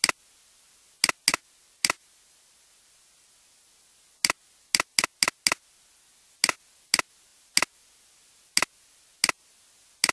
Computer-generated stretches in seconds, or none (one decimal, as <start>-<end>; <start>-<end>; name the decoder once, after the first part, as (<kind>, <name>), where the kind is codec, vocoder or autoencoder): none